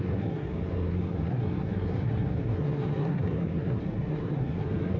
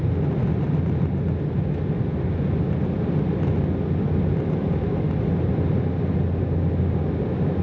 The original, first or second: second